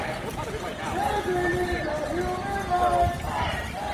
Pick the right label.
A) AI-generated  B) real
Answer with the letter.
B